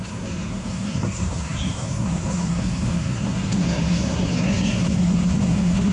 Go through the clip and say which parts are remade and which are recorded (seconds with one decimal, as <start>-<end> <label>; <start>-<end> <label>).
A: 0.0-5.9 remade